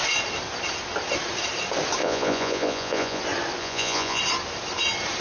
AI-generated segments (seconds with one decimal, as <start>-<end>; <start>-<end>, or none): 2.0-3.2; 3.6-4.2

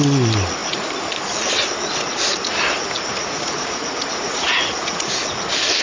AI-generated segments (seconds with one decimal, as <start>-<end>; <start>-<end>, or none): 3.2-5.1

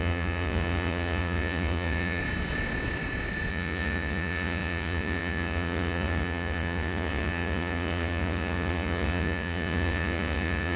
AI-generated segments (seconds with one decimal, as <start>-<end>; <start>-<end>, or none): 0.0-2.2; 3.5-10.8